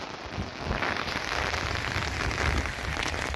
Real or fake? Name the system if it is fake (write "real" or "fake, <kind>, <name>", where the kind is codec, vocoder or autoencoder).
real